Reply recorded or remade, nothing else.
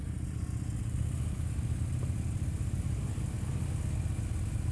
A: recorded